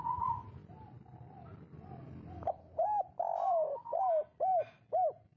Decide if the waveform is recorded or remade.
recorded